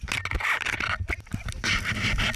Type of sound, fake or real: real